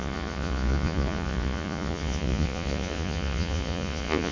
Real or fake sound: fake